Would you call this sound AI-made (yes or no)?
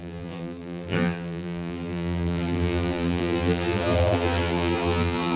yes